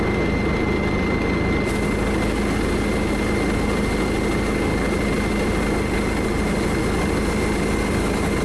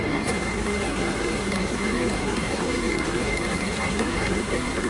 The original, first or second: first